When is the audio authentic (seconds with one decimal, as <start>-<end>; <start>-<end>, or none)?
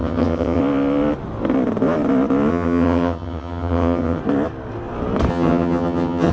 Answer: 0.6-2.5; 4.2-5.3